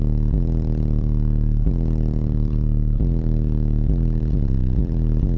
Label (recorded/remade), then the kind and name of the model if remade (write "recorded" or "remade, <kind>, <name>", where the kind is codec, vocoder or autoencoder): remade, vocoder, BigVGAN v2